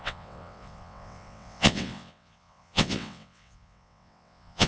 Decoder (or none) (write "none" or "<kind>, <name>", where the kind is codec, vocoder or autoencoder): vocoder, WaveNeXt